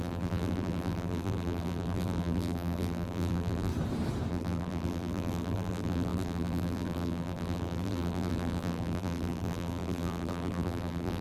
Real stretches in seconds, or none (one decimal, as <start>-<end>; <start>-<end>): 3.7-4.3